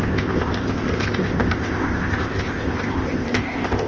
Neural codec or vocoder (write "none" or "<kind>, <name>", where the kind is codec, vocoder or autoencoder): codec, ZipCodec